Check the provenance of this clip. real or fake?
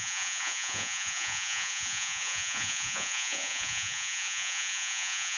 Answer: fake